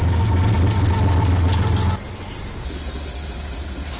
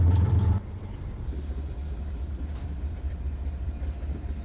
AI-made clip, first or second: second